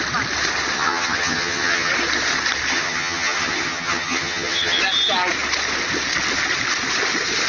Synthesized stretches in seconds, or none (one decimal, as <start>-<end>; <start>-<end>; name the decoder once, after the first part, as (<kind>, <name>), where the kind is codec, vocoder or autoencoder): 0.7-1.9 (vocoder, HiFi-GAN); 2.7-4.8